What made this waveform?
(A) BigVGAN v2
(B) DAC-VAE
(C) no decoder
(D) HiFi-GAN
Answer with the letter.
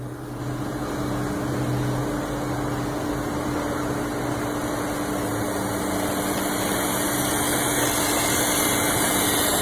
C